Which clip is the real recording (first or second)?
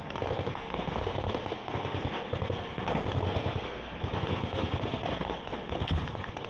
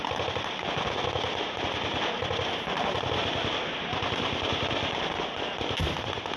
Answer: second